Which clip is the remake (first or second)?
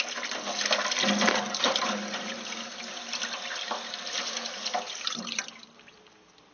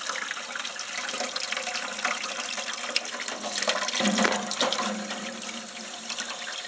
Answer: second